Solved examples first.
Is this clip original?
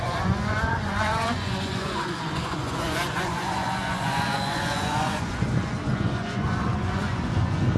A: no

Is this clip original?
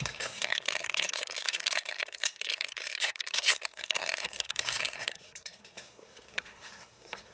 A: no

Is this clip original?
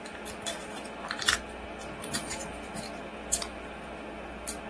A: yes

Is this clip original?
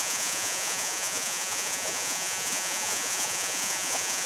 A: no